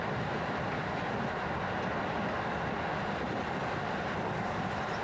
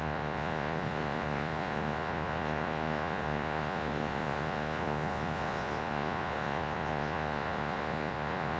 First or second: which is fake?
second